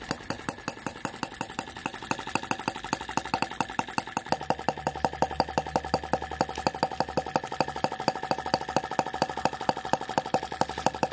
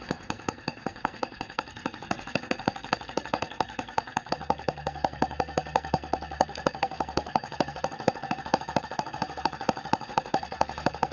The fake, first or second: second